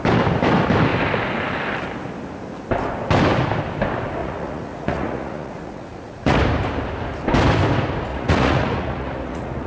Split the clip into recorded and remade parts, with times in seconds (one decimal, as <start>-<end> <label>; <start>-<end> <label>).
0.0-4.2 recorded; 4.2-6.4 remade; 6.4-8.1 recorded; 8.1-9.7 remade